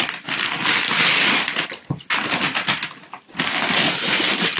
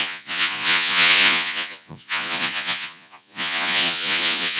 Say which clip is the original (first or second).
first